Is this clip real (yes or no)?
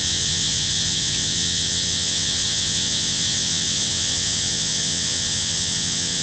no